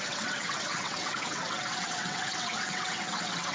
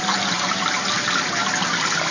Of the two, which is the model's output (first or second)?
first